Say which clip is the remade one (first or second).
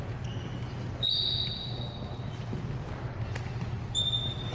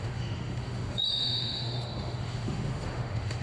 second